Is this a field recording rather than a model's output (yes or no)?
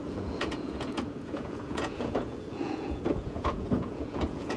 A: no